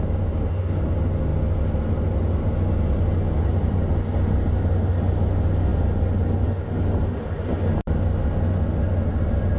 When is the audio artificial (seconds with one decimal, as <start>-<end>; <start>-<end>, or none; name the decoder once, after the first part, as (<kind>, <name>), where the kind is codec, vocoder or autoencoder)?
none